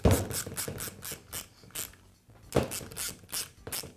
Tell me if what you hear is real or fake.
real